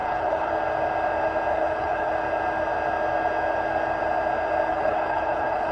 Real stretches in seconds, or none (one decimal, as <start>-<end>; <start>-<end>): 0.5-1.5; 2.1-4.7